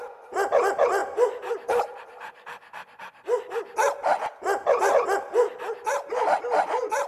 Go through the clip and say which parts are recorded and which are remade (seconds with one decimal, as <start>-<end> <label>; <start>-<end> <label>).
0.0-1.0 recorded; 1.0-2.0 remade; 2.0-7.1 recorded